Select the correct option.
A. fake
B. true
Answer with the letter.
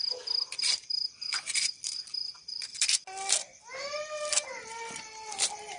A